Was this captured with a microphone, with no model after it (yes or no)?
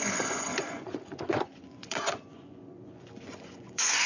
no